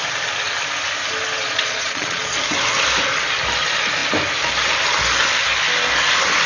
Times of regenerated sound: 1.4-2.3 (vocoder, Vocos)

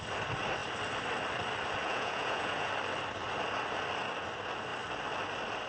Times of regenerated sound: 1.8-2.7 (vocoder, Vocos)